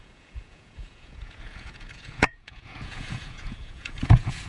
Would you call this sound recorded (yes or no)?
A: no